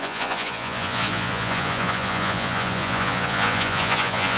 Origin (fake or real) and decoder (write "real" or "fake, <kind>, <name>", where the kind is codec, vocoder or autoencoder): fake, vocoder, Vocos